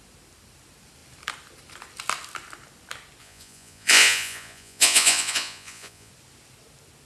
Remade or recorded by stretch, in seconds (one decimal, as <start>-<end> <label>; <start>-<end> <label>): 0.0-3.2 recorded; 3.2-6.1 remade; 6.1-7.1 recorded